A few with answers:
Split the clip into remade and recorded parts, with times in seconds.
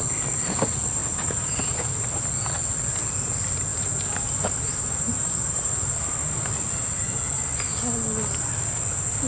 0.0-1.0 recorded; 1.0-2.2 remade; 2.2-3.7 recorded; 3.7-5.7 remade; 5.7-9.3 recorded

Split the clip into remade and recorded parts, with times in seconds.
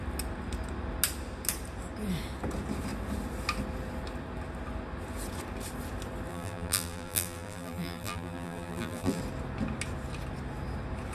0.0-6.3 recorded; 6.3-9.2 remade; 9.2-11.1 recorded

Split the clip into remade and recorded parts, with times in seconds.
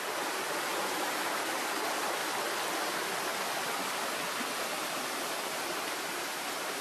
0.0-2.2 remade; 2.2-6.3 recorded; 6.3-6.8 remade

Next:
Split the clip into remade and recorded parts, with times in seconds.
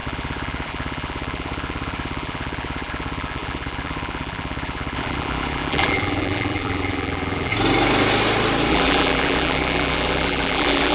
0.0-7.5 remade; 7.5-8.7 recorded; 8.7-10.9 remade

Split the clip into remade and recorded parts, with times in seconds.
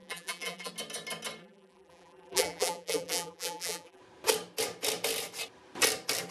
0.0-0.7 remade; 0.7-1.4 recorded; 1.4-4.0 remade; 4.0-6.3 recorded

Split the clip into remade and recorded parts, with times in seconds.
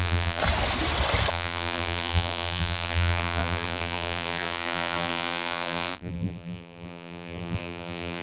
0.0-0.4 remade; 0.4-1.3 recorded; 1.3-8.2 remade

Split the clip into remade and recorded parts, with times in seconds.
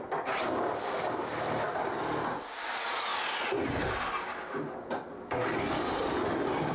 0.0-6.7 recorded